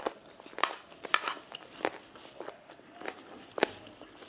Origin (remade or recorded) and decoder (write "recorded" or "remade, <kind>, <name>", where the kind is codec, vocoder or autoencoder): remade, vocoder, BigVGAN v2